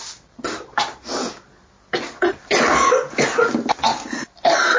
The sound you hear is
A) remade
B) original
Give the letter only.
B